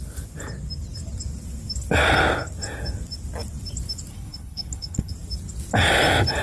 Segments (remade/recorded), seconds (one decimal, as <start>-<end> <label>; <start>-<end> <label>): 0.0-4.1 recorded; 4.1-5.1 remade; 5.1-6.4 recorded